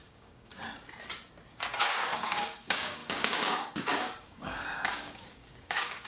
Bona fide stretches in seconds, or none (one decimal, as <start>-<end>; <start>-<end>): 0.5-1.8